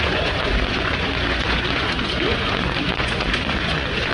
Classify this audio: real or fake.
fake